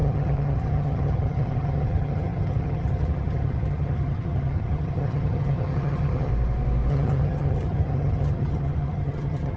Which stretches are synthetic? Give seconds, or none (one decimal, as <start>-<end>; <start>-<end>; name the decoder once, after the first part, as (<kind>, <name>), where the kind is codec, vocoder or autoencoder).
0.0-6.3 (vocoder, HiFi-GAN); 6.9-9.6